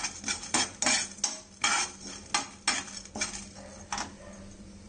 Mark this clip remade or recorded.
recorded